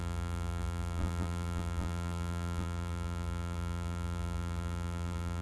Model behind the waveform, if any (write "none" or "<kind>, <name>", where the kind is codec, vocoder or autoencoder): vocoder, BigVGAN v2